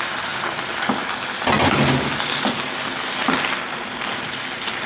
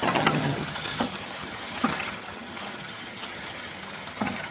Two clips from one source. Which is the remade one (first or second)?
second